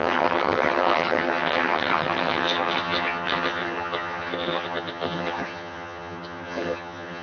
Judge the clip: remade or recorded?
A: remade